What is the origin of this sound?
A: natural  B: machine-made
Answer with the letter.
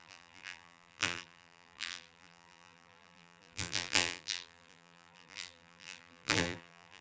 B